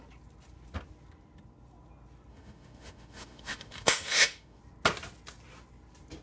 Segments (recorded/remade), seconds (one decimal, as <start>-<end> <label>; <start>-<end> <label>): 0.0-2.3 recorded; 2.3-4.6 remade; 4.6-6.2 recorded